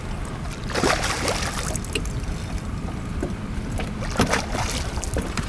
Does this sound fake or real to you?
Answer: real